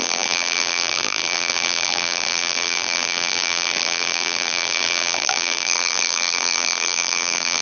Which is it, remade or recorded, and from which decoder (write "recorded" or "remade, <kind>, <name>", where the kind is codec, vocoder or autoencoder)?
remade, vocoder, BigVGAN v2